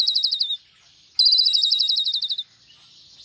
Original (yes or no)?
yes